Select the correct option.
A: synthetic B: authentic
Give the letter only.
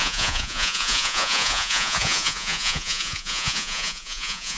A